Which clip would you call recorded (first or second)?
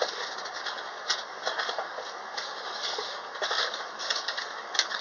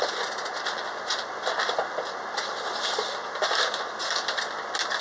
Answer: second